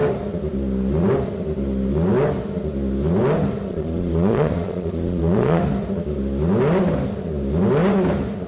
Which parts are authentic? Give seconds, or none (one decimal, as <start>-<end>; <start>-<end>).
0.0-3.7; 5.6-8.5